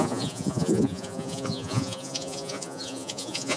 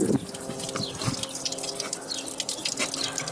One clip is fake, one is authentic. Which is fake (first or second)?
first